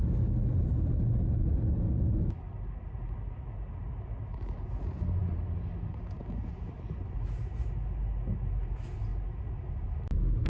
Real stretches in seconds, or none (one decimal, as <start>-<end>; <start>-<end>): 0.0-10.5

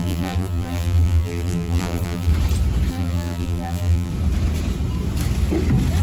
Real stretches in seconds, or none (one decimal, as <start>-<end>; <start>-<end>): 2.3-2.9; 4.1-6.0

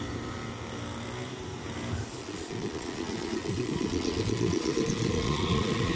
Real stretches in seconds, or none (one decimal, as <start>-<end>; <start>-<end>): 0.0-2.2

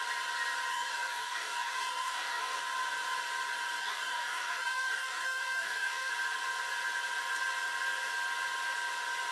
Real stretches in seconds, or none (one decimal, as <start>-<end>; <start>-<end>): 0.0-0.7; 2.6-3.8; 6.1-9.3

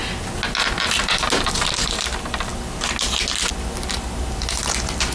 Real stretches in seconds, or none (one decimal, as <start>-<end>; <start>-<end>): 0.0-5.1

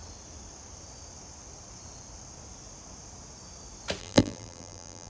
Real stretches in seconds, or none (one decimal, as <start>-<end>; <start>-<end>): 0.0-4.0

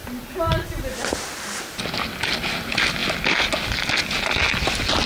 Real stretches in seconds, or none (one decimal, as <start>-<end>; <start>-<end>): 0.0-5.1

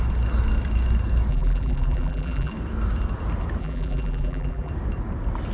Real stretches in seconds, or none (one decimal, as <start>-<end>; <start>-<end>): 0.0-1.3; 2.5-3.6; 4.7-5.5